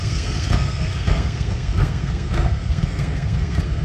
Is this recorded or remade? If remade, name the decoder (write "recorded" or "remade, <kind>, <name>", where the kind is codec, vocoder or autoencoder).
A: remade, codec, SNAC